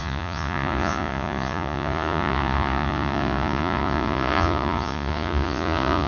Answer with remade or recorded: remade